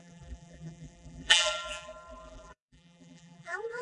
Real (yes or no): no